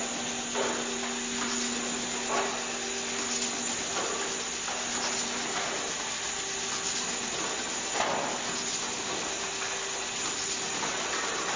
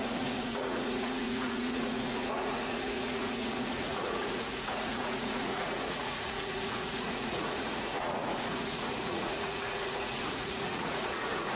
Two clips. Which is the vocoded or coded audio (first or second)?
second